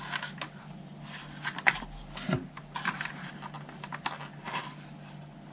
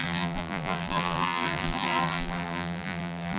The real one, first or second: first